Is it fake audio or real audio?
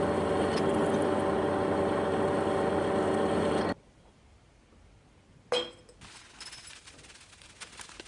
real